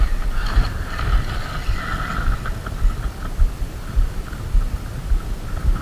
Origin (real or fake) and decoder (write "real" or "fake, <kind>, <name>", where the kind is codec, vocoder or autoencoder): real